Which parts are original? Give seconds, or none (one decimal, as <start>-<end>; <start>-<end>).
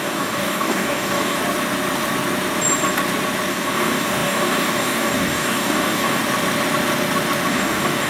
1.4-3.5; 6.2-7.5